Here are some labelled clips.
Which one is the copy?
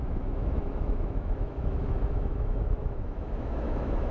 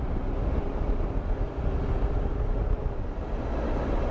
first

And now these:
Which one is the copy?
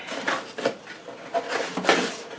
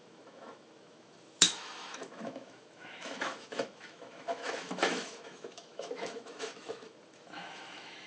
second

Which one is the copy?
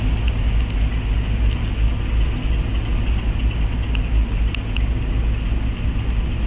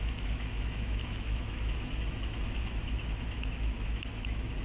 second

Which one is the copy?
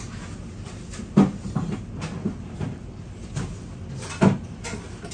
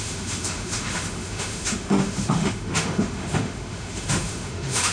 second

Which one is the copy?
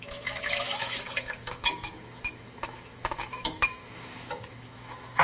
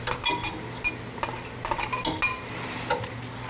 first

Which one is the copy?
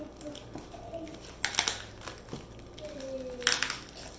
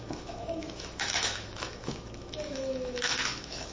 second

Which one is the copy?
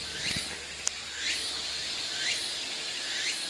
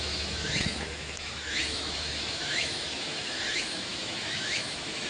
second